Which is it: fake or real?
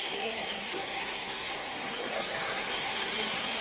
fake